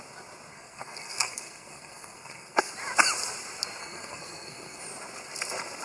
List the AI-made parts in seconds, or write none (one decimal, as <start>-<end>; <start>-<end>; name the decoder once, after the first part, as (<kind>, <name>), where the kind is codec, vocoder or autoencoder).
0.5-2.7 (codec, SNAC); 3.8-4.8